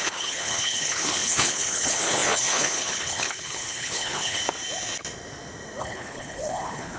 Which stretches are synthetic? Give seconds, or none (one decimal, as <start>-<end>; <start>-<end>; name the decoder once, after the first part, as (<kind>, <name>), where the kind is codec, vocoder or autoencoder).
0.0-4.4 (codec, HILCodec); 5.8-7.0